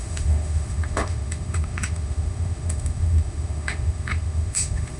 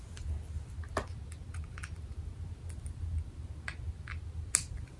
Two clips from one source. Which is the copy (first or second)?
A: first